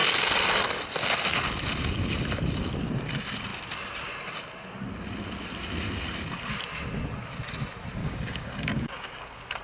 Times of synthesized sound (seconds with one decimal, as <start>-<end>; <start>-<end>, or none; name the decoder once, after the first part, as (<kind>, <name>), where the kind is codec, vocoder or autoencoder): 8.0-9.6 (codec, DAC)

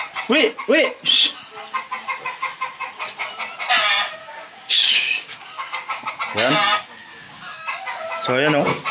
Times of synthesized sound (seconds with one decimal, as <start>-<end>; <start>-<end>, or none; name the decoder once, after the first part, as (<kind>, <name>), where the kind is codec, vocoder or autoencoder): 4.2-6.1 (codec, DAC); 7.1-8.0